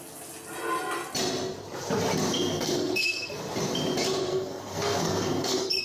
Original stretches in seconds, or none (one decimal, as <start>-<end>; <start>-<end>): 0.0-2.3; 3.4-4.3